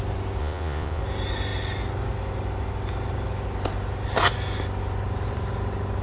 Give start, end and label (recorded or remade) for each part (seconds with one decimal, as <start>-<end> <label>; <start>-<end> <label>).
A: 0.0-0.4 recorded; 0.4-1.0 remade; 1.0-6.0 recorded